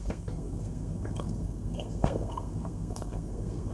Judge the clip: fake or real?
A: fake